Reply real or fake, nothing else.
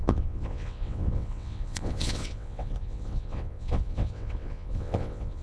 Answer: fake